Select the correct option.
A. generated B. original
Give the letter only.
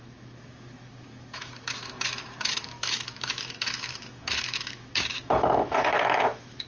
A